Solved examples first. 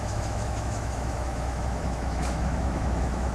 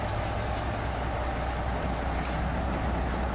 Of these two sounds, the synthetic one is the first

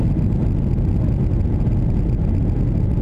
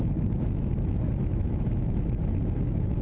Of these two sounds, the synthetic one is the second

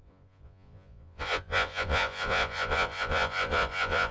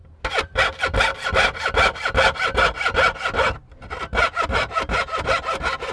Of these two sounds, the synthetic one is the first